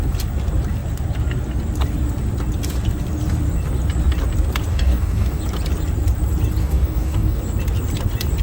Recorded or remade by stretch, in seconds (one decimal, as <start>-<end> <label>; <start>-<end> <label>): 0.0-4.7 recorded; 4.7-5.4 remade; 5.4-6.6 recorded; 6.6-7.4 remade; 7.4-8.4 recorded